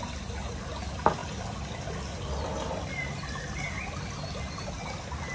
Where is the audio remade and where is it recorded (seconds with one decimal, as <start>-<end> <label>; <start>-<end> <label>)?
0.0-5.3 recorded